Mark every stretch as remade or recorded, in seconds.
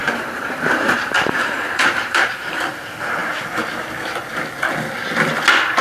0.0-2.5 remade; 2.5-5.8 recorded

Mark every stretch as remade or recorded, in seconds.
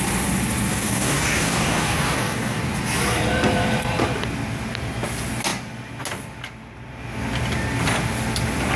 0.0-0.7 recorded; 0.7-2.6 remade; 2.6-8.8 recorded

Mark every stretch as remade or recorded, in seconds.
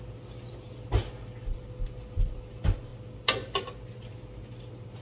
0.0-5.0 recorded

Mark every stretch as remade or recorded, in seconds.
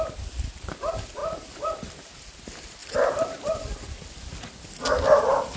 0.0-1.2 recorded; 1.2-2.3 remade; 2.3-2.8 recorded; 2.8-4.0 remade; 4.0-5.6 recorded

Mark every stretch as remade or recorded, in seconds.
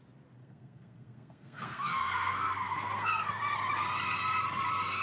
0.0-0.4 recorded; 0.4-3.4 remade; 3.4-5.0 recorded